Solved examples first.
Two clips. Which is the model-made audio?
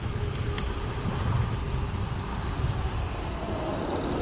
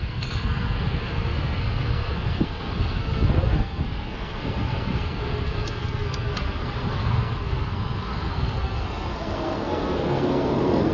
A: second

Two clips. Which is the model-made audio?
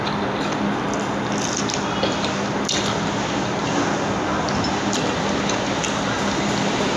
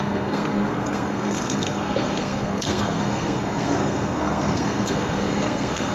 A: second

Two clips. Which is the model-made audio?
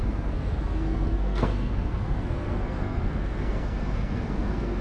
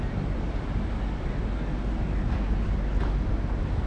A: first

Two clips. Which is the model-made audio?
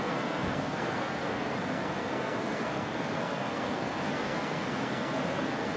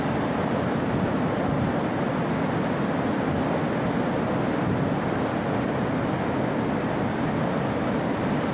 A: first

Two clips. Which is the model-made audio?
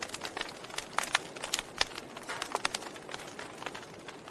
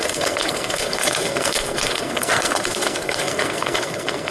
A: second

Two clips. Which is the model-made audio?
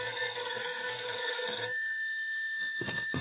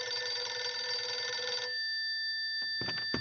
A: first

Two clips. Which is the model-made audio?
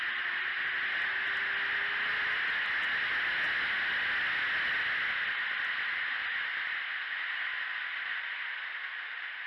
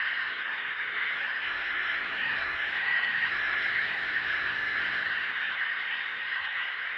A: second